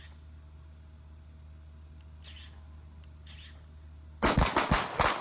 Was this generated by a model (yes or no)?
no